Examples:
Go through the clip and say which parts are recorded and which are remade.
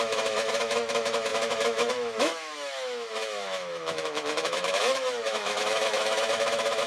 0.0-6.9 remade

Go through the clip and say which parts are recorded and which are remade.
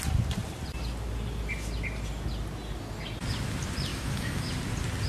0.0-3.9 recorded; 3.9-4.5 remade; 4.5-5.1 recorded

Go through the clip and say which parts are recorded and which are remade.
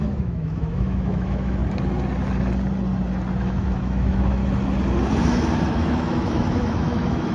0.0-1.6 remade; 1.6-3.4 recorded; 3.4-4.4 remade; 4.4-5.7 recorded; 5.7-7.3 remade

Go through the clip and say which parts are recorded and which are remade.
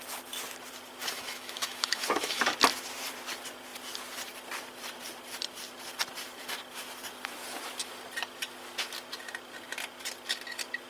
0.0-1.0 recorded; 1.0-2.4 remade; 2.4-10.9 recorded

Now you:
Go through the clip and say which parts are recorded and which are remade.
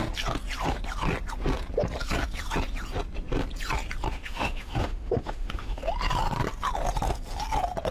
0.0-4.1 recorded; 4.1-5.8 remade; 5.8-7.9 recorded